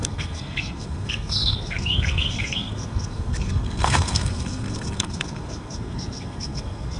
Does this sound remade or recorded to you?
remade